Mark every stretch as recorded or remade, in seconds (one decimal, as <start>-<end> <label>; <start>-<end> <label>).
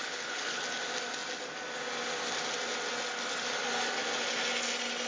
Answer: 0.0-0.6 remade; 0.6-5.1 recorded